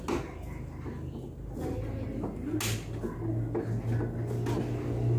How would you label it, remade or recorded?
recorded